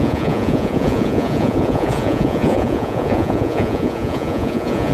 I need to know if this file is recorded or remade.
remade